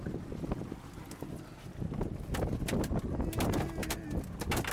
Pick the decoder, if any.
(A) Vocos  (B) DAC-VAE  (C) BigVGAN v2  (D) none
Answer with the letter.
D